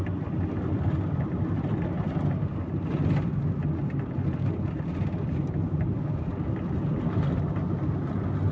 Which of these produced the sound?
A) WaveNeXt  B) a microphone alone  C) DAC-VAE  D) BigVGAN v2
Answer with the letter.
B